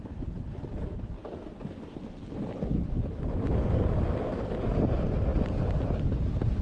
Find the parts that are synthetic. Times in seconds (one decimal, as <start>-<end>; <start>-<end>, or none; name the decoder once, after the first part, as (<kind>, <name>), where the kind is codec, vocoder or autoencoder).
none